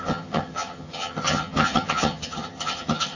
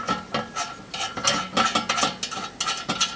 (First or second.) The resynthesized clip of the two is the first